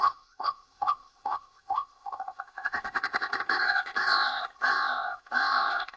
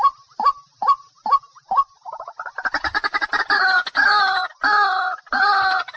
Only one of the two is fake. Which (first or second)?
first